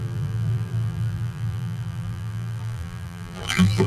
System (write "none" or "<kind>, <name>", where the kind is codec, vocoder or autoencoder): vocoder, BigVGAN v2